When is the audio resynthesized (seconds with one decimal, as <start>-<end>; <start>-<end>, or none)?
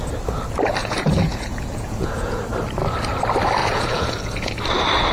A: 0.8-2.4; 3.6-4.6